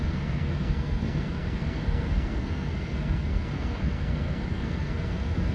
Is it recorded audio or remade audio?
remade